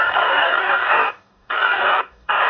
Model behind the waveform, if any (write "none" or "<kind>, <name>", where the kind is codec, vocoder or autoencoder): codec, DAC